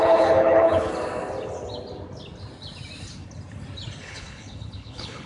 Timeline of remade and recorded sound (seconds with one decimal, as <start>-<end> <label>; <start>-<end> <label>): 0.0-0.9 remade; 0.9-4.0 recorded; 4.0-5.3 remade

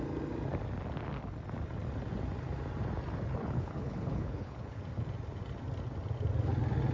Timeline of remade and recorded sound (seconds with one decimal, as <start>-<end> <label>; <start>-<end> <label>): 0.0-3.3 recorded; 3.3-4.8 remade; 4.8-6.9 recorded

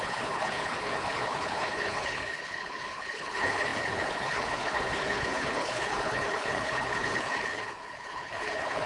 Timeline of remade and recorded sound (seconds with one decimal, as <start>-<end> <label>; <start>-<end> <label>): 0.0-8.9 remade

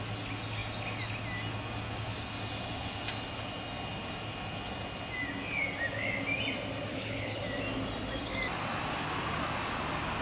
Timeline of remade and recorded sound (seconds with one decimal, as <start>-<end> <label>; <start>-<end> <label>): 0.0-6.9 recorded; 6.9-7.4 remade; 7.4-10.2 recorded

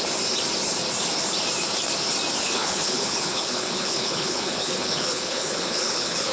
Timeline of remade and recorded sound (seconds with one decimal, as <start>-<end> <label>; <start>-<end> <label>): 0.0-2.4 recorded; 2.4-6.3 remade

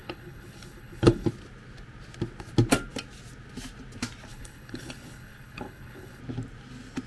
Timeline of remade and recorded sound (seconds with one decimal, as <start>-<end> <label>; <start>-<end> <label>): 0.0-1.3 remade; 1.3-4.3 recorded; 4.3-6.2 remade; 6.2-7.1 recorded

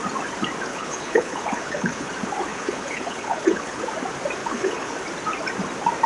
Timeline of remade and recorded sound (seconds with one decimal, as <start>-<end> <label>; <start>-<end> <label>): 0.0-0.7 recorded; 0.7-2.1 remade; 2.1-2.5 recorded; 2.5-3.8 remade; 3.8-4.4 recorded; 4.4-4.9 remade; 4.9-6.1 recorded

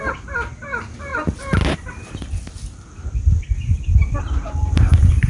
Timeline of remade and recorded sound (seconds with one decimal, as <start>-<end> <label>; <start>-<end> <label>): 0.0-5.3 recorded